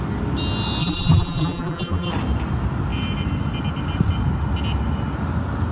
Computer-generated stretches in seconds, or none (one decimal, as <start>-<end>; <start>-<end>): 0.8-2.1